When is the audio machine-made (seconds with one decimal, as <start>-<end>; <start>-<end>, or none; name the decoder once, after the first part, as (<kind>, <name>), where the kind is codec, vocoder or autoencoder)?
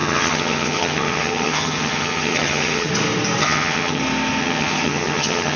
0.0-2.9 (vocoder, HiFi-GAN); 3.4-4.0; 4.4-5.6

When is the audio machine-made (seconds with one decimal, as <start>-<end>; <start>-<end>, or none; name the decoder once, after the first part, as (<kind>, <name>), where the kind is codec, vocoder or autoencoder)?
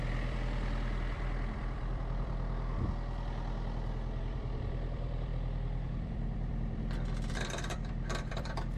0.0-2.3 (vocoder, BigVGAN v2); 4.2-8.8